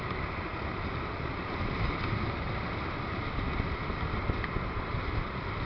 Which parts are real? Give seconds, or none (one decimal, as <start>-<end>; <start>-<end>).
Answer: 0.0-5.7